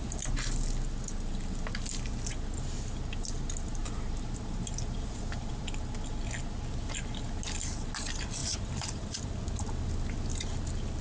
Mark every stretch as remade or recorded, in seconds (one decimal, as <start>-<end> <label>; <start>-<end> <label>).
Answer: 0.0-3.8 recorded; 3.8-5.5 remade; 5.5-8.4 recorded; 8.4-9.3 remade; 9.3-11.0 recorded